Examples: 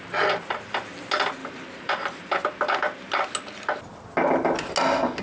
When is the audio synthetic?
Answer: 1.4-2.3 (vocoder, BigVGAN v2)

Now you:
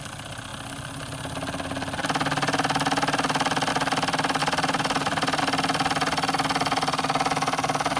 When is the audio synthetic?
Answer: 4.4-5.4 (vocoder, BigVGAN v2)

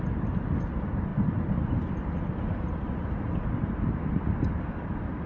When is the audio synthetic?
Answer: none

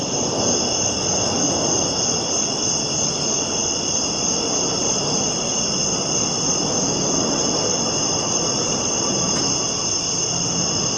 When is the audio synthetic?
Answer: 3.6-4.2 (vocoder, BigVGAN v2); 7.4-9.1

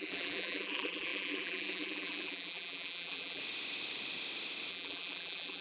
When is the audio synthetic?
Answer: 0.0-3.4 (vocoder, BigVGAN v2); 4.7-5.6

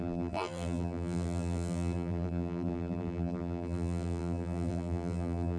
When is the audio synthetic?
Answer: 0.0-5.6 (vocoder, BigVGAN v2)